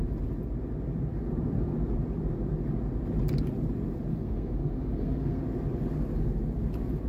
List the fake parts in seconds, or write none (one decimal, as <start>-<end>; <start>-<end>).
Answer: 4.1-5.4